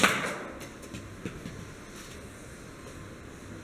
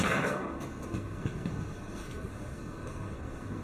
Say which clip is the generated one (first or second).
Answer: second